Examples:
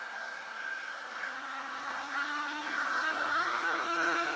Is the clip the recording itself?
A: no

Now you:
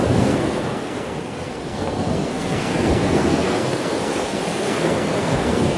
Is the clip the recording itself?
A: no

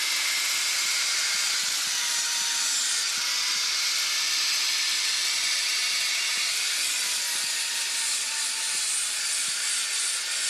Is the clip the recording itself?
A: yes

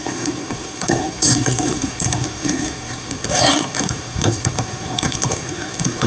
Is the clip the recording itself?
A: no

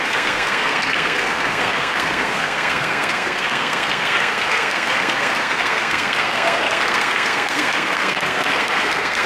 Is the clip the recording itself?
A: no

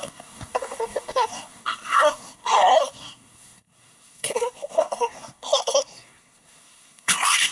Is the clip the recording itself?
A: no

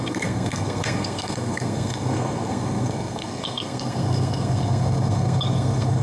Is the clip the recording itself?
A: no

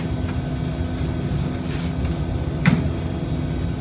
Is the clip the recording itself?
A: yes